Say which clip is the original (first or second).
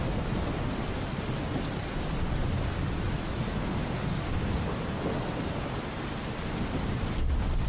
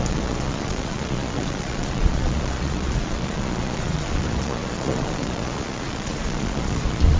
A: first